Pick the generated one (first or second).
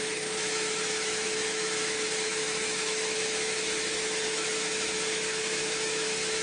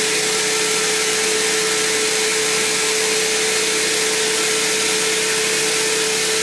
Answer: first